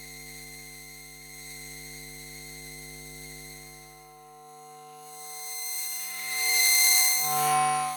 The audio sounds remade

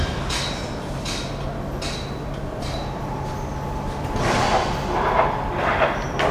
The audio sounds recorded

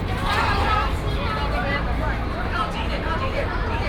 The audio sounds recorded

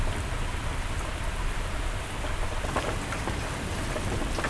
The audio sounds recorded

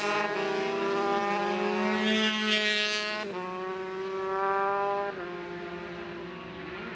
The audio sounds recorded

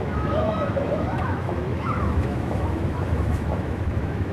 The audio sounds remade